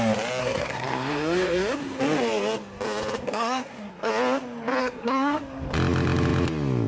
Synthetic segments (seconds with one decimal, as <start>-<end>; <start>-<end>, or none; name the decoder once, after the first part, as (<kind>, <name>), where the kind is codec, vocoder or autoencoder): 0.4-2.0 (codec, SNAC); 3.2-4.1; 4.8-5.4